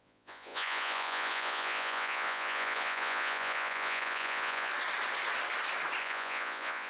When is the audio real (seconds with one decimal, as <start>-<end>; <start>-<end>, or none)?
4.7-6.0